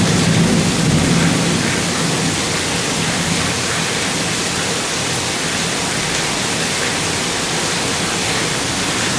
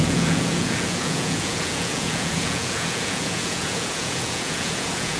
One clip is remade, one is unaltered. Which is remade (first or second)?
second